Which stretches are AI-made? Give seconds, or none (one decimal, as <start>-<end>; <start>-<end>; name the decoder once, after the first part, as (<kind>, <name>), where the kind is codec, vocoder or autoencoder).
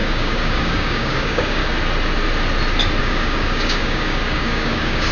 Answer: 0.0-1.6 (codec, DAC); 3.0-5.1